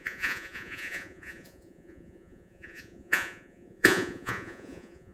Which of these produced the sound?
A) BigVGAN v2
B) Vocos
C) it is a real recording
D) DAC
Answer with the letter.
B